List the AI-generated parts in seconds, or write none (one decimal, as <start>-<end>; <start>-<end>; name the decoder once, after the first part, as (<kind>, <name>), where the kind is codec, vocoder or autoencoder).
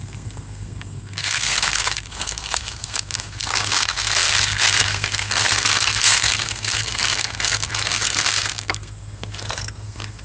0.0-10.2 (codec, SNAC)